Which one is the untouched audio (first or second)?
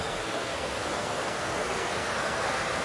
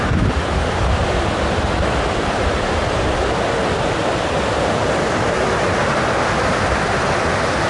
second